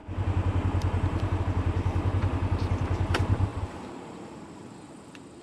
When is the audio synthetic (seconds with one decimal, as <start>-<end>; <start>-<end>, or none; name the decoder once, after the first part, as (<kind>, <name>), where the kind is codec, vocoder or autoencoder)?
0.0-5.4 (vocoder, BigVGAN v2)